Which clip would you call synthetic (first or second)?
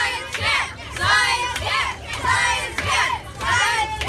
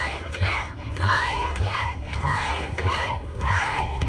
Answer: second